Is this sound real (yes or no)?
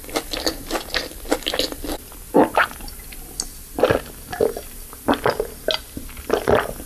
yes